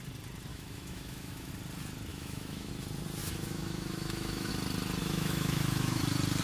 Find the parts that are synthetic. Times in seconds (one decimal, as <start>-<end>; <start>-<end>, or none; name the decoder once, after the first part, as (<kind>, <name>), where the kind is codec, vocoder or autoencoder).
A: 0.5-1.5 (autoencoder, DAC-VAE); 2.1-2.7; 3.2-4.5; 5.0-6.0